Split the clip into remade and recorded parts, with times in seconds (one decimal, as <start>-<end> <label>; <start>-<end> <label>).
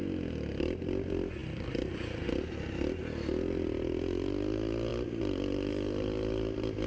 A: 0.0-6.9 recorded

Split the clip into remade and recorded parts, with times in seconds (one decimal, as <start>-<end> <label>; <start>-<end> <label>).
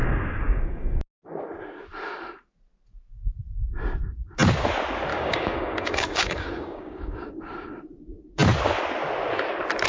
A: 0.0-1.0 remade; 1.0-5.1 recorded; 5.1-7.3 remade; 7.3-9.9 recorded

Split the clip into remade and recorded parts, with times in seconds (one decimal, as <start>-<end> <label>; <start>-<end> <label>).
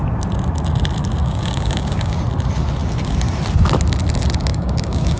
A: 0.0-1.2 recorded; 1.2-2.2 remade; 2.2-4.5 recorded; 4.5-5.2 remade